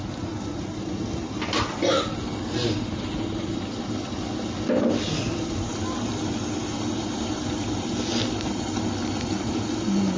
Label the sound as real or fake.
real